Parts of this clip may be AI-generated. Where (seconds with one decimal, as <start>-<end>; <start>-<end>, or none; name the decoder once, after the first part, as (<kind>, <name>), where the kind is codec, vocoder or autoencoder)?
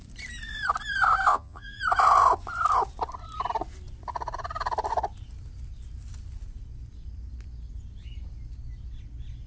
1.3-1.8 (vocoder, Vocos)